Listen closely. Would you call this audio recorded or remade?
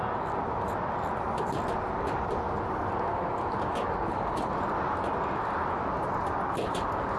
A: recorded